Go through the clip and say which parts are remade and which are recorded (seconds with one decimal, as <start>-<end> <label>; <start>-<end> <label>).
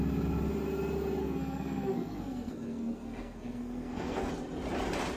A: 0.0-1.2 recorded; 1.2-4.3 remade; 4.3-5.2 recorded